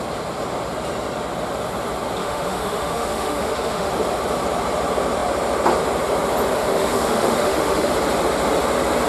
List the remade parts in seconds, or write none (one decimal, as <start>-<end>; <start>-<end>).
2.2-3.9; 6.6-7.9